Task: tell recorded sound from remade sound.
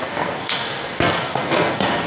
remade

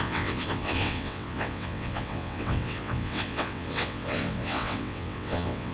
remade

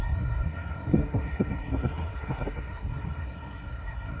remade